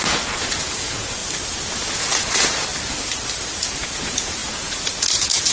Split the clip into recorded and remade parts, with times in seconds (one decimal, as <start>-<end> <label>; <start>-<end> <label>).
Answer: 0.0-1.2 remade; 1.2-1.8 recorded; 1.8-2.7 remade; 2.7-3.6 recorded; 3.6-5.5 remade